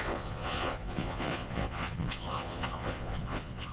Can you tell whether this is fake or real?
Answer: fake